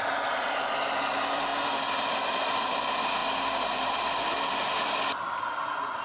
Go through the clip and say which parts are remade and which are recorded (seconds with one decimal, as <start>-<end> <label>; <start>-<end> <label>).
0.0-6.0 remade